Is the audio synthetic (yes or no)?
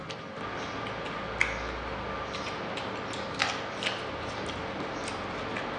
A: no